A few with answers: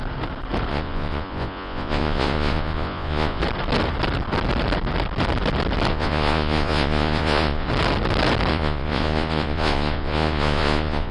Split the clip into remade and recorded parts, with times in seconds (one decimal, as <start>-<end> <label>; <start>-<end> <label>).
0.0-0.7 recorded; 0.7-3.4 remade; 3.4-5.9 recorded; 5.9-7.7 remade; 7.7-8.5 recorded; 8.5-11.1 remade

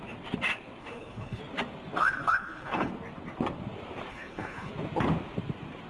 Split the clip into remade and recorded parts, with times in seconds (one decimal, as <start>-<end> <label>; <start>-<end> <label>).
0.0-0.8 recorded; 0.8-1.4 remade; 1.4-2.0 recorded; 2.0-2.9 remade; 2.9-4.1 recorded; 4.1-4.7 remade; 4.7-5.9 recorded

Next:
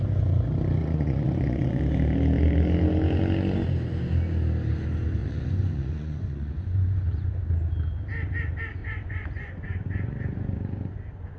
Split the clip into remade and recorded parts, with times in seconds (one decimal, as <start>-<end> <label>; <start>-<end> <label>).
0.0-0.8 recorded; 0.8-1.8 remade; 1.8-5.2 recorded; 5.2-7.4 remade; 7.4-8.8 recorded; 8.8-11.0 remade; 11.0-11.4 recorded

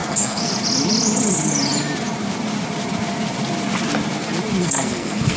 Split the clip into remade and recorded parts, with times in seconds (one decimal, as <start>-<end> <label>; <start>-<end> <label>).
0.0-0.5 remade; 0.5-4.6 recorded; 4.6-5.4 remade

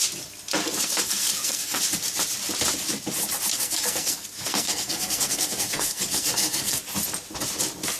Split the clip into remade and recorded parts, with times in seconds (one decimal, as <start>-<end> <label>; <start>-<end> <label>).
0.0-0.6 recorded; 0.6-1.8 remade; 1.8-3.5 recorded; 3.5-6.8 remade; 6.8-8.0 recorded

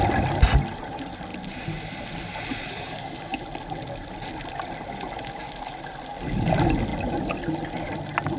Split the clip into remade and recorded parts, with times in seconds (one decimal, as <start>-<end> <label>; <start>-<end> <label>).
0.0-8.4 recorded